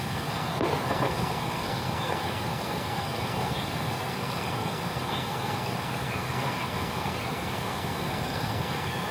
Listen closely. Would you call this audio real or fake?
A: fake